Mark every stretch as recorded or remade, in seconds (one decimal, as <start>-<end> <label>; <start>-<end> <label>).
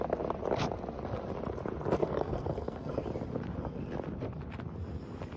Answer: 0.0-2.0 recorded; 2.0-3.0 remade; 3.0-5.4 recorded